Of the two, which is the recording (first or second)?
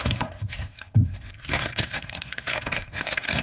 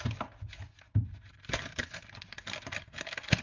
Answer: second